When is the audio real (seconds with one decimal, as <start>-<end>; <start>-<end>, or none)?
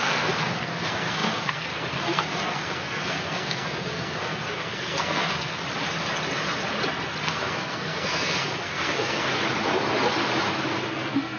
5.6-7.2; 9.3-10.9